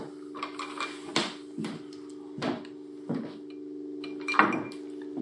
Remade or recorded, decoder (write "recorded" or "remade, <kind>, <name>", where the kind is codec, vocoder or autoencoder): recorded